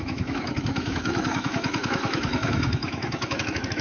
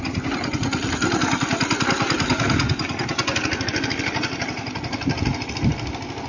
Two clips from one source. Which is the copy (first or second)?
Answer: first